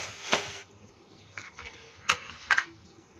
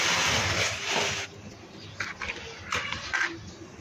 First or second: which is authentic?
second